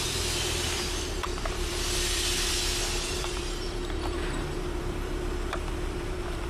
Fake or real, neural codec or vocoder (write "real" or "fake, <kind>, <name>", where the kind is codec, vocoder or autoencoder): fake, vocoder, BigVGAN v2